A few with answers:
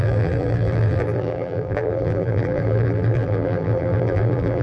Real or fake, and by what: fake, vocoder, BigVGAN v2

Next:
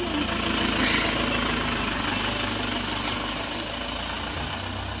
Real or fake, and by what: real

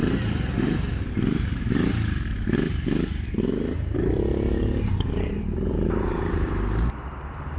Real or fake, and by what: fake, vocoder, BigVGAN v2